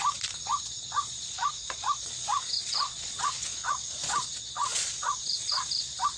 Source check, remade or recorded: remade